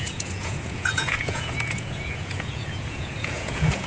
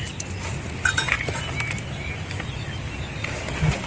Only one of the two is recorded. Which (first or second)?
second